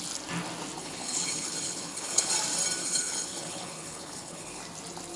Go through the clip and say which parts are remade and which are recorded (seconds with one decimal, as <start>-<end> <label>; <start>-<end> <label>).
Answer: 0.0-0.8 recorded; 0.8-2.3 remade; 2.3-2.8 recorded; 2.8-4.6 remade; 4.6-5.2 recorded